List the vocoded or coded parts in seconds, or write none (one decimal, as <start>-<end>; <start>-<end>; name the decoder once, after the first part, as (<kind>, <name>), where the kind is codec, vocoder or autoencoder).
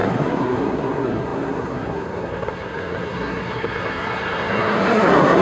0.0-5.4 (codec, SNAC)